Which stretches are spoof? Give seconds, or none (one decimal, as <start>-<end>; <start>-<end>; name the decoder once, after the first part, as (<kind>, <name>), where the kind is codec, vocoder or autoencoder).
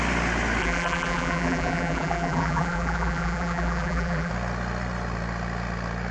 0.6-4.3 (vocoder, BigVGAN v2)